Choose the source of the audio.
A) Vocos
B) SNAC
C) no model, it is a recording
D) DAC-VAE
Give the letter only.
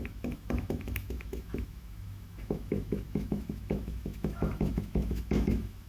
D